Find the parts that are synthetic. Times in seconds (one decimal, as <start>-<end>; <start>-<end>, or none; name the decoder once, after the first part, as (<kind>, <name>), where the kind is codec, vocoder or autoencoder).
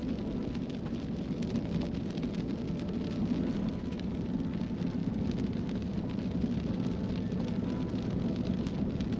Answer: none